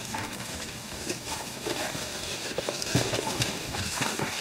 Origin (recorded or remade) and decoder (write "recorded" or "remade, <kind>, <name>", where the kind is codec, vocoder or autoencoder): remade, codec, DAC